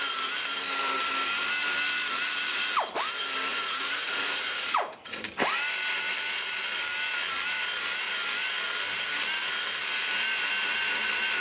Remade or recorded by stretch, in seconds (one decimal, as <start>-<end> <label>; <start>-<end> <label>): 0.0-3.5 recorded; 3.5-5.2 remade; 5.2-11.4 recorded